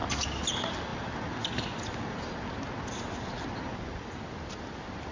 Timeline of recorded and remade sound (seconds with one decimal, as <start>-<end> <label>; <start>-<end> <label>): 0.0-5.1 recorded